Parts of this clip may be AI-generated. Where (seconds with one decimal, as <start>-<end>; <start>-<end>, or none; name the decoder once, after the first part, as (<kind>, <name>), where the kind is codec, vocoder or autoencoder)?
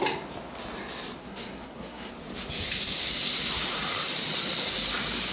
1.2-2.1 (codec, SNAC)